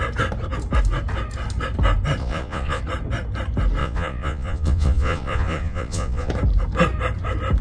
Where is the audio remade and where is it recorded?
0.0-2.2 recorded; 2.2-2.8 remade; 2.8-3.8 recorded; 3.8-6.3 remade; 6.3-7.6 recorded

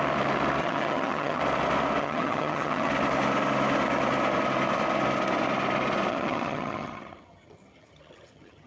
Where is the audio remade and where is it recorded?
0.0-0.6 recorded; 0.6-1.4 remade; 1.4-2.0 recorded; 2.0-2.9 remade; 2.9-6.1 recorded; 6.1-8.7 remade

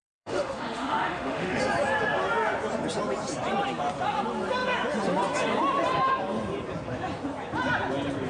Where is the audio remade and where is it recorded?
0.0-1.6 remade; 1.6-8.3 recorded

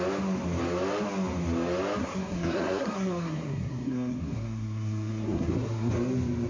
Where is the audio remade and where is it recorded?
0.0-2.0 recorded; 2.0-5.9 remade; 5.9-6.5 recorded

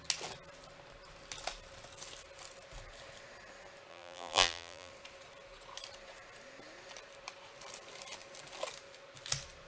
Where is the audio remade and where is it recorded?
0.0-3.9 recorded; 3.9-4.9 remade; 4.9-9.7 recorded